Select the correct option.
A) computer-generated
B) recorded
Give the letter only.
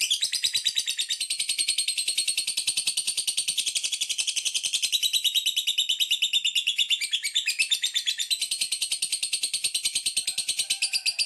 A